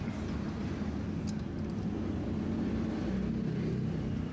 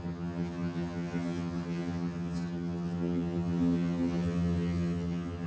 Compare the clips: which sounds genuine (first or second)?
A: first